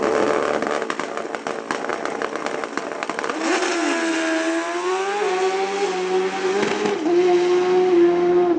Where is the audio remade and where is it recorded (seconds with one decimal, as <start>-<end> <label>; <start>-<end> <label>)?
0.0-8.6 recorded